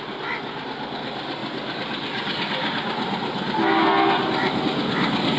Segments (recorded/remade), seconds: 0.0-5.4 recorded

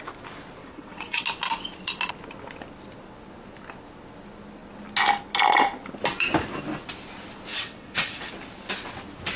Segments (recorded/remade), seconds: 0.0-0.6 recorded; 0.6-1.2 remade; 1.2-7.5 recorded; 7.5-8.3 remade; 8.3-9.4 recorded

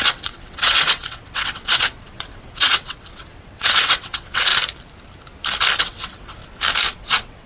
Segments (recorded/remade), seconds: 0.0-4.5 remade; 4.5-5.8 recorded; 5.8-6.4 remade; 6.4-7.0 recorded; 7.0-7.5 remade

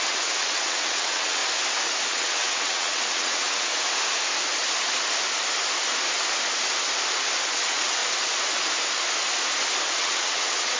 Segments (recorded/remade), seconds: 0.0-1.4 remade; 1.4-2.1 recorded; 2.1-3.7 remade; 3.7-7.5 recorded; 7.5-8.0 remade; 8.0-10.0 recorded; 10.0-10.8 remade

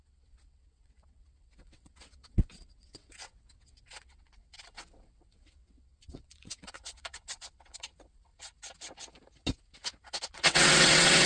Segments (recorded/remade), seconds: 0.0-8.3 remade; 8.3-10.3 recorded; 10.3-11.3 remade

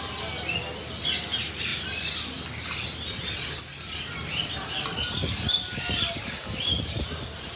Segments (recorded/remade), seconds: 0.0-7.6 recorded